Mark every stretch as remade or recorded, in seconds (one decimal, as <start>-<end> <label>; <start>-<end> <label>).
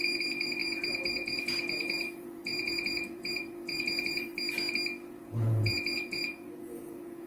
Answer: 0.0-4.3 remade; 4.3-5.1 recorded; 5.1-7.3 remade